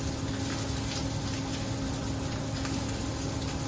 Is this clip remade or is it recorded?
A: recorded